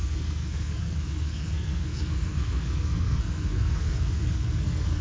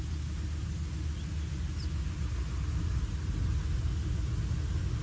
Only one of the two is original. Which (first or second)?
second